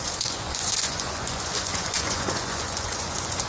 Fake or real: fake